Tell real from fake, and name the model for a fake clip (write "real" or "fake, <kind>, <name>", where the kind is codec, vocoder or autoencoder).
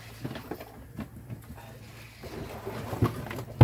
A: real